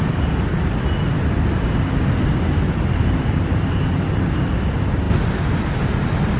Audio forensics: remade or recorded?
recorded